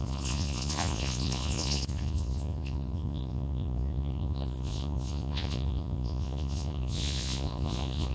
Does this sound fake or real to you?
fake